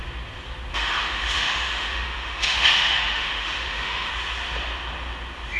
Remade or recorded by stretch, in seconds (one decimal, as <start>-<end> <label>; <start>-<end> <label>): 0.0-0.7 recorded; 0.7-4.1 remade; 4.1-5.6 recorded